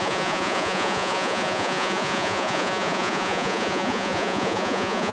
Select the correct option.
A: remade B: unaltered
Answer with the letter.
A